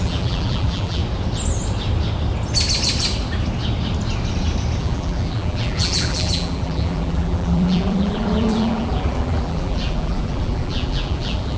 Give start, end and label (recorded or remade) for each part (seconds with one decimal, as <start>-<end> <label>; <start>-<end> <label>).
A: 0.0-1.0 remade; 1.0-4.8 recorded; 4.8-11.6 remade